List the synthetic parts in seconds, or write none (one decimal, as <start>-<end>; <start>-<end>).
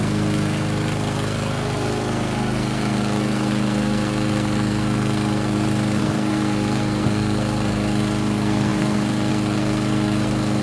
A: 0.0-10.6